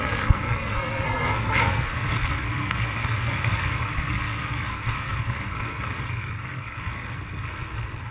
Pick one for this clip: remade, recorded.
remade